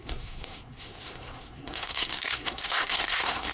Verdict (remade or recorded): remade